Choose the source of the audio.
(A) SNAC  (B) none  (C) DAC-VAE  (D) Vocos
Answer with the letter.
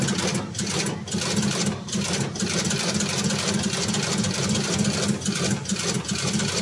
B